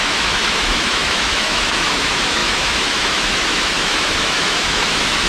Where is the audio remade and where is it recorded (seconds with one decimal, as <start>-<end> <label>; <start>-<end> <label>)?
0.0-5.3 remade